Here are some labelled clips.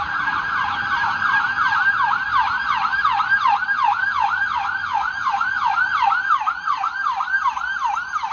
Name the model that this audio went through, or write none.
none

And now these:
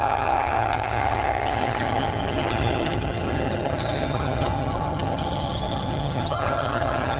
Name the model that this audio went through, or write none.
vocoder, HiFi-GAN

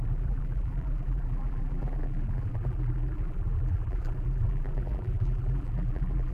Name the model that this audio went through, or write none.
vocoder, BigVGAN v2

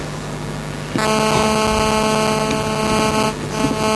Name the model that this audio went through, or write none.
none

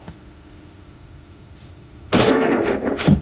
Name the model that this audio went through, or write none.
autoencoder, DAC-VAE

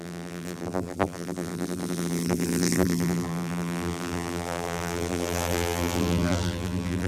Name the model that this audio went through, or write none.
vocoder, BigVGAN v2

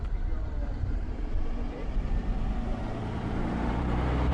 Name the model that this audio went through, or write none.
vocoder, BigVGAN v2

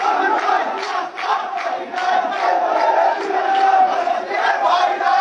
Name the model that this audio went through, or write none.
none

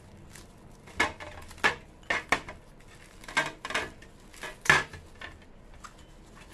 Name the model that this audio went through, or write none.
none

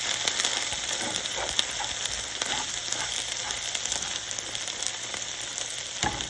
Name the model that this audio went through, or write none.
vocoder, BigVGAN v2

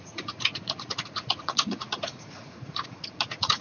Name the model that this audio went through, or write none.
vocoder, Vocos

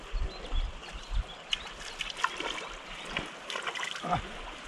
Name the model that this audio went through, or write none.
none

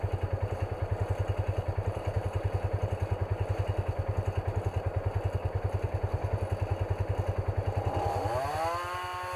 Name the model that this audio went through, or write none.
none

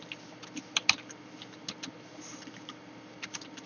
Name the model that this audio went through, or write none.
none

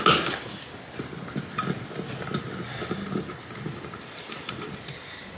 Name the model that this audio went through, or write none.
none